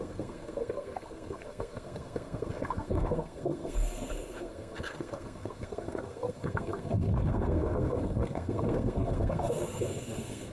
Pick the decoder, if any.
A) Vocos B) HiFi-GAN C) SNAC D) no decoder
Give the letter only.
C